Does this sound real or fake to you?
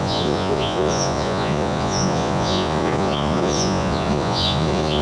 fake